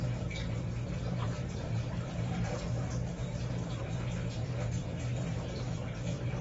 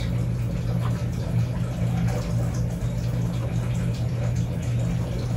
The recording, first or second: second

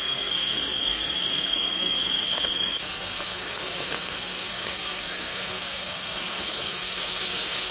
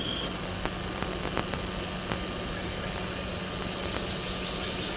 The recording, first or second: second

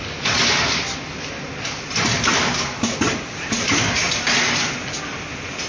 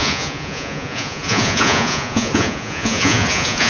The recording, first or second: first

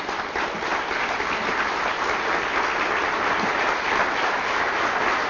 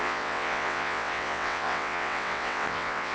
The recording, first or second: first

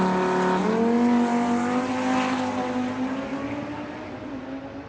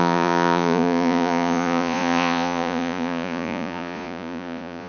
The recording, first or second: first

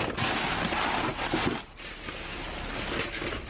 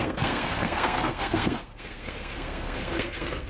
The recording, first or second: first